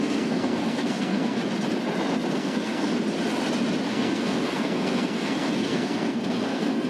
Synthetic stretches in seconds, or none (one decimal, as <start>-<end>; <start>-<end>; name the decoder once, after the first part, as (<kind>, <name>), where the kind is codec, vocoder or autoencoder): 0.0-1.4 (codec, SNAC); 2.3-2.9; 3.9-6.9